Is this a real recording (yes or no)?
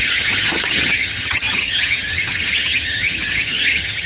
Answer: no